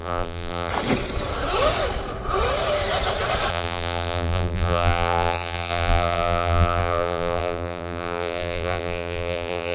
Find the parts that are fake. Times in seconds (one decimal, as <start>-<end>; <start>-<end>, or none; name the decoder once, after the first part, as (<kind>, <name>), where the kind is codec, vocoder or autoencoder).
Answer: 0.0-0.7 (vocoder, BigVGAN v2); 3.5-9.7